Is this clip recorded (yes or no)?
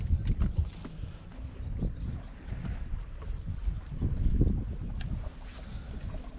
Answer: yes